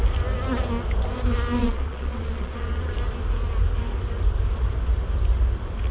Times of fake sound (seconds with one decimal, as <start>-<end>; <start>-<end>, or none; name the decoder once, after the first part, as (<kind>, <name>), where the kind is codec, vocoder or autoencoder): 1.6-2.9 (vocoder, Vocos)